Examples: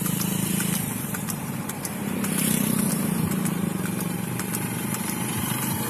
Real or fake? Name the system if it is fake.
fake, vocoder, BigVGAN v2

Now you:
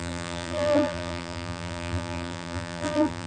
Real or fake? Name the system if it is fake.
fake, vocoder, BigVGAN v2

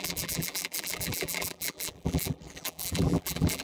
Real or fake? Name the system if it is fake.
fake, vocoder, BigVGAN v2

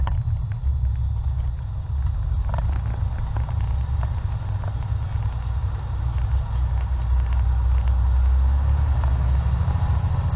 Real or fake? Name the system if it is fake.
real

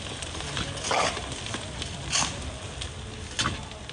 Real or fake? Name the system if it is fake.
real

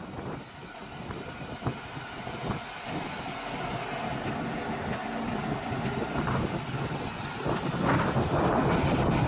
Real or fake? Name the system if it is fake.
real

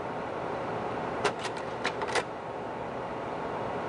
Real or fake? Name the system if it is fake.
fake, vocoder, BigVGAN v2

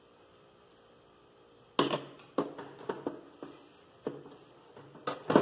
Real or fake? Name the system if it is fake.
real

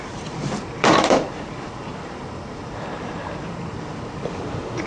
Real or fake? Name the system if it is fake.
fake, vocoder, BigVGAN v2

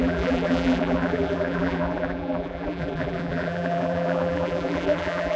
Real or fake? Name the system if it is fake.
fake, vocoder, BigVGAN v2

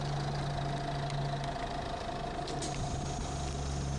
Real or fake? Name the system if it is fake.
real